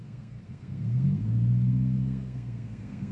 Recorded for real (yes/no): no